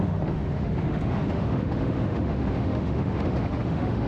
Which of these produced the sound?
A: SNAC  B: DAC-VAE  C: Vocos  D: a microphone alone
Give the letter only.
B